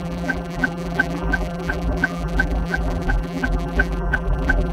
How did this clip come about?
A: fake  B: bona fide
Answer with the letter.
A